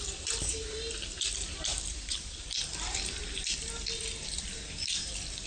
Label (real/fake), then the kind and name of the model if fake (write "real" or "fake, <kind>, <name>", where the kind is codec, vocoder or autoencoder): fake, vocoder, BigVGAN v2